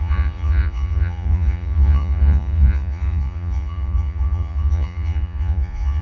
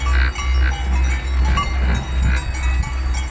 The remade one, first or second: first